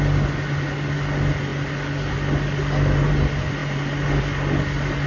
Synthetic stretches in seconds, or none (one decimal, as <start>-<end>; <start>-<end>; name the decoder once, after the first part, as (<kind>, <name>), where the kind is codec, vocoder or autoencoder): none